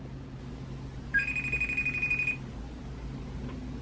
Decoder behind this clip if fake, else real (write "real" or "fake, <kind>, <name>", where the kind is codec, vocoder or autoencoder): real